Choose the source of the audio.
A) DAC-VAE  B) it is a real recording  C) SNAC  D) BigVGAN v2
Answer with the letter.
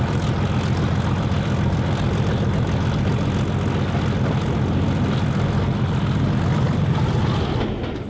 B